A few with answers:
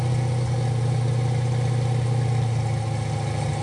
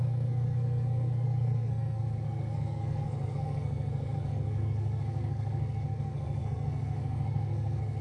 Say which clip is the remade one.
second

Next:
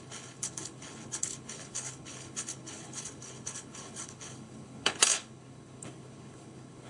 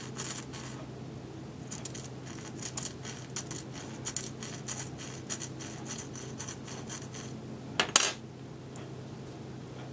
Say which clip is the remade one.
first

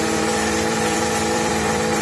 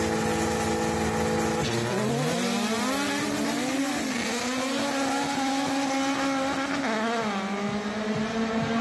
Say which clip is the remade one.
first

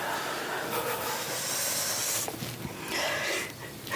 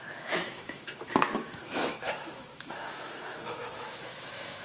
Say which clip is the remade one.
second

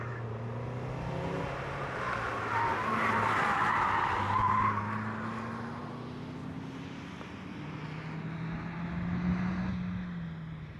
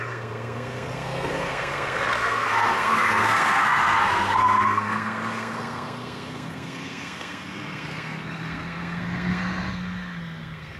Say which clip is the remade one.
second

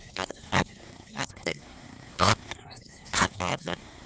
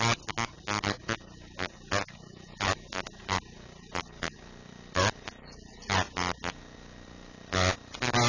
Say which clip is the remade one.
first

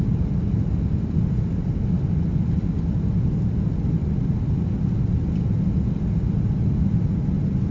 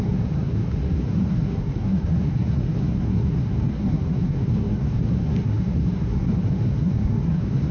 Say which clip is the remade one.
second